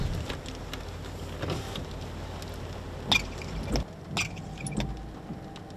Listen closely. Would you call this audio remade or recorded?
recorded